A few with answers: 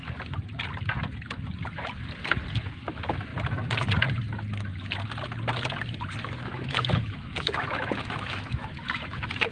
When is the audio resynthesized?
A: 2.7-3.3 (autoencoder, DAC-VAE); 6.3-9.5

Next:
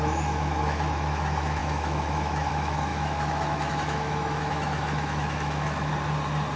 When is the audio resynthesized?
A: 0.0-5.9 (autoencoder, DAC-VAE)

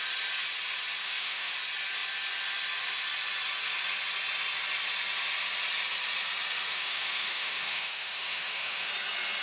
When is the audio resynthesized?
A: 1.0-1.5 (autoencoder, DAC-VAE); 6.7-8.9

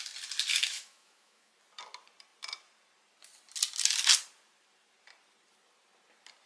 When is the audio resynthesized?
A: 0.5-1.5 (autoencoder, DAC-VAE)

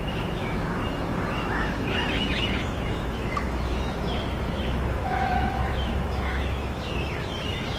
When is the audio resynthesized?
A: 0.0-0.8 (autoencoder, DAC-VAE); 1.3-7.8

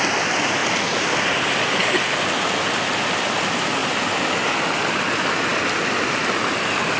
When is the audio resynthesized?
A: none